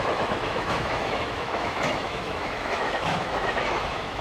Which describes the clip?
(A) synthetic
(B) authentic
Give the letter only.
A